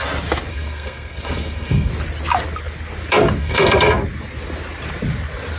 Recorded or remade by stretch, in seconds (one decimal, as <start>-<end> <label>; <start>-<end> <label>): 0.0-0.5 recorded; 0.5-1.9 remade; 1.9-3.4 recorded; 3.4-3.9 remade; 3.9-5.6 recorded